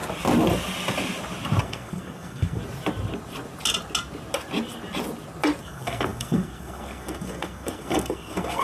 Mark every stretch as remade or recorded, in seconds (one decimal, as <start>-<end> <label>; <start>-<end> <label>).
0.0-1.6 recorded; 1.6-2.6 remade; 2.6-5.6 recorded; 5.6-8.6 remade